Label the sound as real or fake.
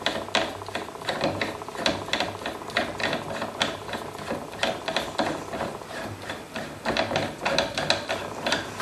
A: real